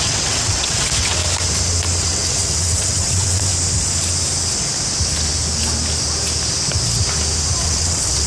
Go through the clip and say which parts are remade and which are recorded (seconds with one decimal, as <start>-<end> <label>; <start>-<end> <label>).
0.0-1.2 remade; 1.2-2.0 recorded; 2.0-3.5 remade; 3.5-7.6 recorded; 7.6-8.3 remade